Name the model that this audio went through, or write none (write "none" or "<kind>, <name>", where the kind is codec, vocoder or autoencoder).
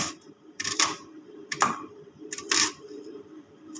vocoder, BigVGAN v2